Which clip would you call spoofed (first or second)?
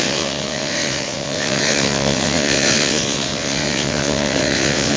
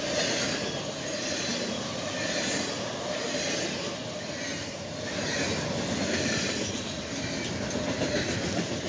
first